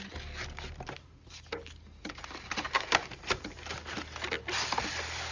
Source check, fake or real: real